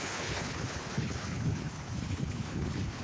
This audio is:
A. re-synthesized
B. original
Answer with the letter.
A